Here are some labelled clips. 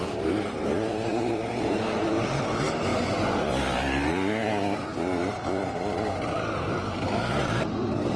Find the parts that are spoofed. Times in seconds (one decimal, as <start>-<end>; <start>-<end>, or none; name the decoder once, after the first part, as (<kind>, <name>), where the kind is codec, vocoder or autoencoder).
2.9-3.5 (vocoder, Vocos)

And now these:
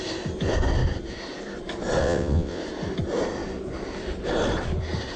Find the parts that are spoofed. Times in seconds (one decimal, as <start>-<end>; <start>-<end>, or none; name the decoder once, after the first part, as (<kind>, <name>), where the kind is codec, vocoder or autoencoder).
2.0-2.6 (vocoder, WaveNeXt)

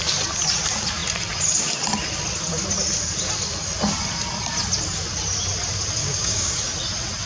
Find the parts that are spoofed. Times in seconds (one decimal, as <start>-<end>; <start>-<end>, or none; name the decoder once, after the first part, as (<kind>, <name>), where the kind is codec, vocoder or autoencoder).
6.0-6.5 (codec, DAC)

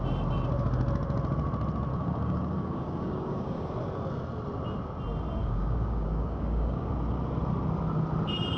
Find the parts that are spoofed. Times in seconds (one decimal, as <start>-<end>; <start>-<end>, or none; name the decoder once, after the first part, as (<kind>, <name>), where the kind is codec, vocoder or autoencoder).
1.9-3.7 (codec, DAC); 5.4-6.9